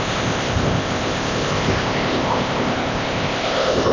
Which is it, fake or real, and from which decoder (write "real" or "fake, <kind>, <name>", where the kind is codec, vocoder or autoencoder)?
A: fake, codec, ZipCodec